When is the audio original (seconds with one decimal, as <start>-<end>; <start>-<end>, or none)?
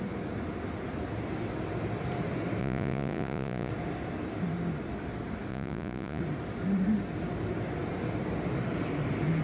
0.0-2.6; 3.7-5.5; 6.2-9.4